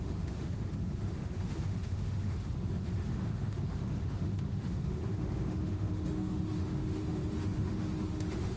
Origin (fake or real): fake